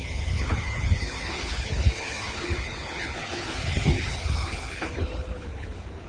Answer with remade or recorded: remade